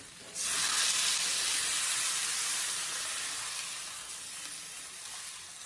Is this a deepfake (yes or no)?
no